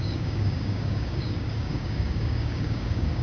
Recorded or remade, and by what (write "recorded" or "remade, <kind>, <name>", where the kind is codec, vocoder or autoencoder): remade, codec, DAC